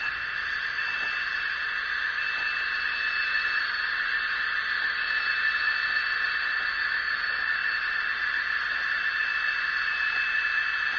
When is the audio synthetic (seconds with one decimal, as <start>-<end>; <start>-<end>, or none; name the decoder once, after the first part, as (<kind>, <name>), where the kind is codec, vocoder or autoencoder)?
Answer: none